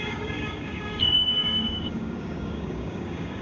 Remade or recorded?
remade